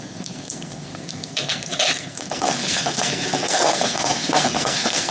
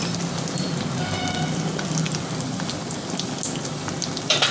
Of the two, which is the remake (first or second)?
first